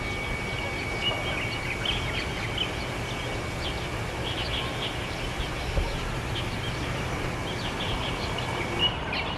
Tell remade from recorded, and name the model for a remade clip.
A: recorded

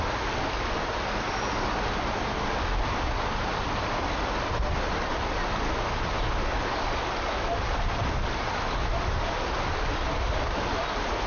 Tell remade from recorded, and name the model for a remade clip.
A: recorded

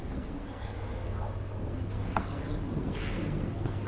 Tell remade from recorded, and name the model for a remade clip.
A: remade, codec, SNAC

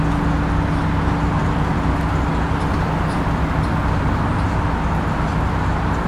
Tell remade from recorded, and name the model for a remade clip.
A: recorded